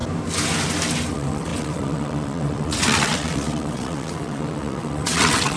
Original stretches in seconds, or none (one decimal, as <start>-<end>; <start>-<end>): 0.0-1.1